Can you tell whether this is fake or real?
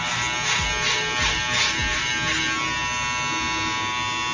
real